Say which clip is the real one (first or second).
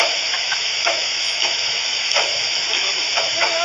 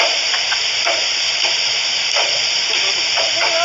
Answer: second